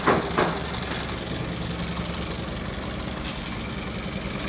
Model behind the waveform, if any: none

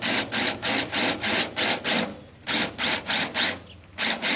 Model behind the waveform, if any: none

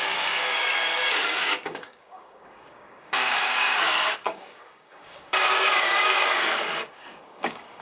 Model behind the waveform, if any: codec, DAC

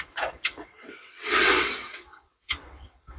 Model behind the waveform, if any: vocoder, WaveNeXt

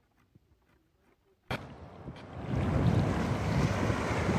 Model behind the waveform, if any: none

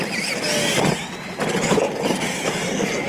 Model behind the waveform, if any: none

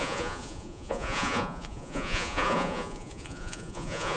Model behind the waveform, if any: vocoder, Vocos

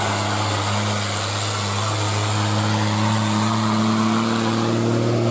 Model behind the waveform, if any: none